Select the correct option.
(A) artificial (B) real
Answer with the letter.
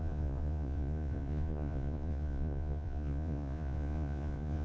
A